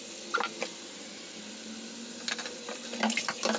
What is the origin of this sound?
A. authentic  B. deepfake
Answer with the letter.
A